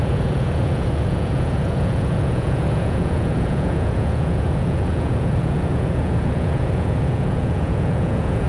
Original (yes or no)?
no